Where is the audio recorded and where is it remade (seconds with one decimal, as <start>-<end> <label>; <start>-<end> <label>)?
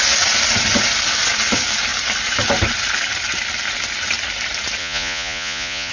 0.0-4.8 recorded; 4.8-5.9 remade